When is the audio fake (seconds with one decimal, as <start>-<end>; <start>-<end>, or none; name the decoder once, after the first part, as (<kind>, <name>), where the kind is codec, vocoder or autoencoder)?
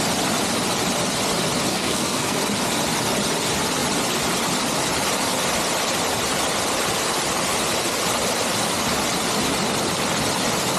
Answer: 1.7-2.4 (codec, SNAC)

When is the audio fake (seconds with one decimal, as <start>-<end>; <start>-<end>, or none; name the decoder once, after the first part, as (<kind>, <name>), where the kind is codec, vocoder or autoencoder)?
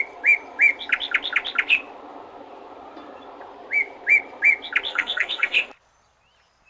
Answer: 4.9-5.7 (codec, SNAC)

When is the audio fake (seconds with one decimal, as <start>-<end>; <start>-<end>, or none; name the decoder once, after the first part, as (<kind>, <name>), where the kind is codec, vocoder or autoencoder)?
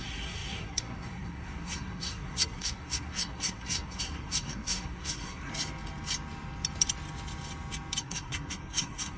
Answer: 0.0-5.5 (codec, SNAC); 8.0-9.2